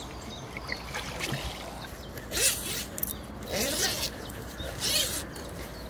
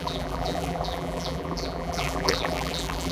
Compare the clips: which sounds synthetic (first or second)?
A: second